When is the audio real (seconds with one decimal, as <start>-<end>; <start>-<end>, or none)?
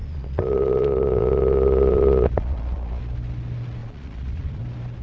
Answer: 3.0-3.8; 4.6-5.0